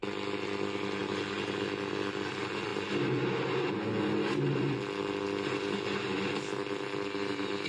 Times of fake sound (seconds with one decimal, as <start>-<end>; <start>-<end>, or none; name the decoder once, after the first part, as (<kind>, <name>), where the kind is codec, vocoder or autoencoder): none